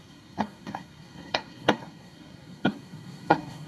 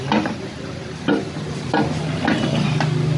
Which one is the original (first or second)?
second